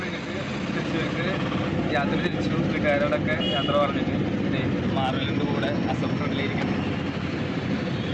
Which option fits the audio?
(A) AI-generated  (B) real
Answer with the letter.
B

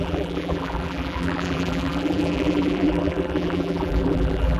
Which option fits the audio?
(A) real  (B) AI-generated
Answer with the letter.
B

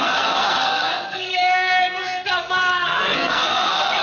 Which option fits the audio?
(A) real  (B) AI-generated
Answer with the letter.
B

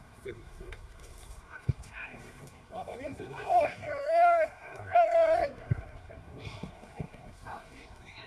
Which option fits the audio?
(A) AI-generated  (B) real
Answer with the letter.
A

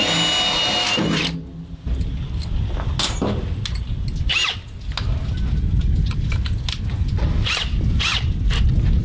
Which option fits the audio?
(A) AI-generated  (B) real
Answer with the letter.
B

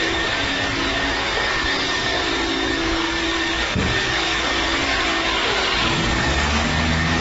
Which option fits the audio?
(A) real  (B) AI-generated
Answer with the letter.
B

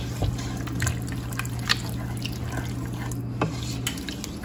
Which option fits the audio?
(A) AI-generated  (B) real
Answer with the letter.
B